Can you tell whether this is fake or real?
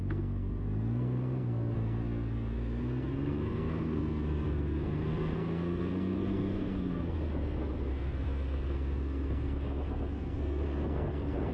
fake